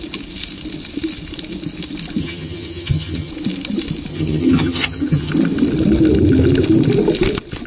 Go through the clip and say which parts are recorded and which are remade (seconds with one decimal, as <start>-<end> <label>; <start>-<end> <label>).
0.0-2.2 recorded; 2.2-3.3 remade; 3.3-4.1 recorded; 4.1-5.3 remade; 5.3-7.7 recorded